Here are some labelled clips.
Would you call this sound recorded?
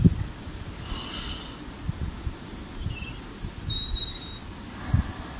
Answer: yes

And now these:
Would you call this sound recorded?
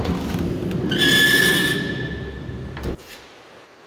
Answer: yes